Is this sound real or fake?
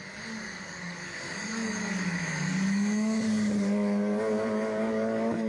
fake